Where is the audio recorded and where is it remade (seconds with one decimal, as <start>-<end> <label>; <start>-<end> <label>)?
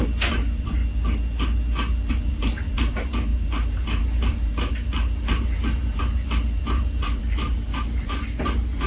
0.0-0.8 remade; 0.8-2.1 recorded; 2.1-8.9 remade